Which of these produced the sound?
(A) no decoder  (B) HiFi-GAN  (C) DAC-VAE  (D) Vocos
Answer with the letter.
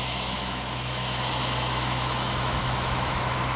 C